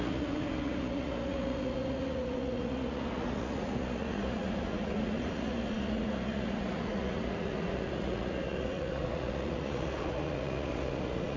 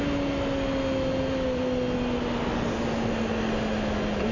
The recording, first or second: second